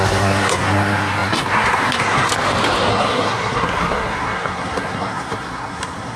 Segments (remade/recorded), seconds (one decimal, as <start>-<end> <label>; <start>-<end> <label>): 0.0-2.3 remade; 2.3-2.9 recorded; 2.9-6.2 remade